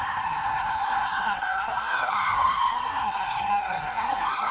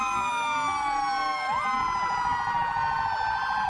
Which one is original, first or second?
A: second